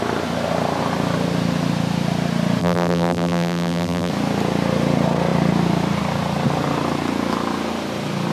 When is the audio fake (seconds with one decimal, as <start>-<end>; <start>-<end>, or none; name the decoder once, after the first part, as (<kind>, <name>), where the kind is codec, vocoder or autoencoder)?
2.6-4.1 (vocoder, BigVGAN v2)